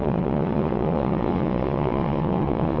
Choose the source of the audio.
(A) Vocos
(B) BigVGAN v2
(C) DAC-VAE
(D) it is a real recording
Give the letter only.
A